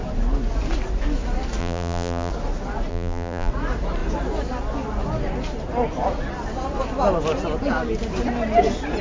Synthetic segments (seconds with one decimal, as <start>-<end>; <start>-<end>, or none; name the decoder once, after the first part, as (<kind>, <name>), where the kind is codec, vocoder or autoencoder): 1.6-2.3 (vocoder, BigVGAN v2); 2.9-3.5